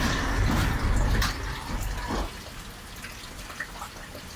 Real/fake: real